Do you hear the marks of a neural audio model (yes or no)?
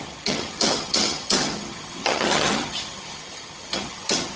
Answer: yes